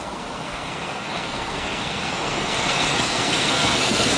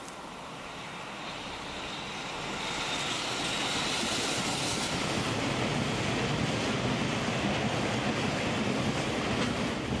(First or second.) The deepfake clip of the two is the first